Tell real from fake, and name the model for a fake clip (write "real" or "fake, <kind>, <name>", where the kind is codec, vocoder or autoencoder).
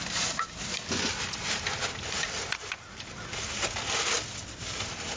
real